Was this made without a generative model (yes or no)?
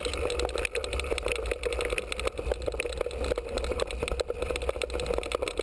yes